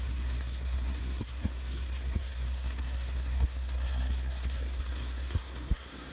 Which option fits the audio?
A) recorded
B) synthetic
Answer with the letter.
B